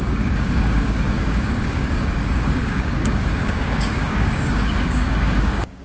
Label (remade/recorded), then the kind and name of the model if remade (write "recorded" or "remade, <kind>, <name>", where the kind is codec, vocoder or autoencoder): remade, codec, DAC